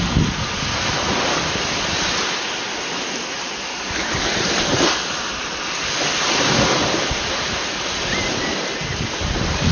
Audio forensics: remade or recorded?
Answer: recorded